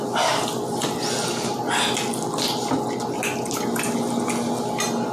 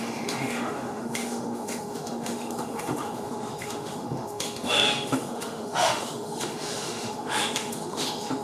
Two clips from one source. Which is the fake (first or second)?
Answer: second